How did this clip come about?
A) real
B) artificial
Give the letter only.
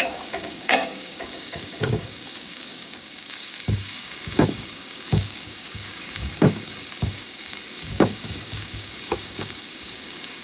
B